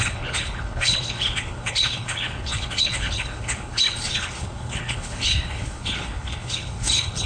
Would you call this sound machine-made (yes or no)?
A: yes